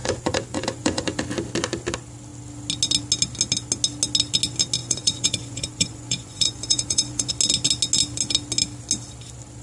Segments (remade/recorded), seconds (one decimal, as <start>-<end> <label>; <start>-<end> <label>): 0.0-1.2 remade; 1.2-4.8 recorded; 4.8-7.3 remade; 7.3-9.6 recorded

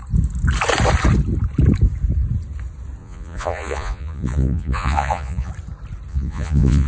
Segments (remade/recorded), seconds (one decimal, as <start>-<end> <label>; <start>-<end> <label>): 0.0-3.0 recorded; 3.0-5.5 remade; 5.5-6.1 recorded; 6.1-6.9 remade

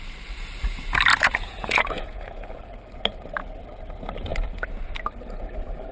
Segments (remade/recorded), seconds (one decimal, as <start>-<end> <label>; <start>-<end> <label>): 0.0-1.1 recorded; 1.1-2.5 remade; 2.5-5.9 recorded

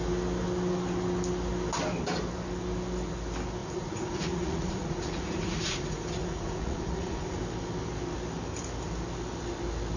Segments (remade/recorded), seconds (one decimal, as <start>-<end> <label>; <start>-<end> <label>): 0.0-3.6 recorded; 3.6-7.4 remade; 7.4-10.0 recorded

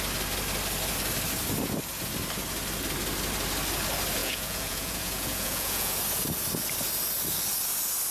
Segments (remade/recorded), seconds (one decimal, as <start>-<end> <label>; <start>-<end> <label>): 0.0-4.2 recorded; 4.2-6.0 remade; 6.0-8.1 recorded